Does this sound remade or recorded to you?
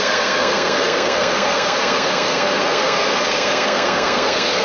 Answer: remade